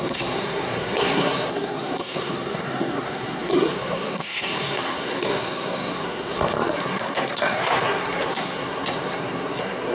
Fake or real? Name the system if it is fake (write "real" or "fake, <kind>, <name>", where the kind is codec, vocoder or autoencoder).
fake, codec, SNAC